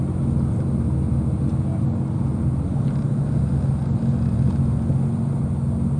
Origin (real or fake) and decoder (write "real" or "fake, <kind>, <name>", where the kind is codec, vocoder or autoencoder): real